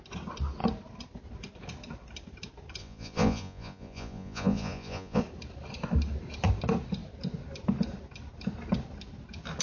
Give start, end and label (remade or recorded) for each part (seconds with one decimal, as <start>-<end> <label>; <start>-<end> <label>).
0.0-2.8 recorded; 2.8-5.2 remade; 5.2-9.6 recorded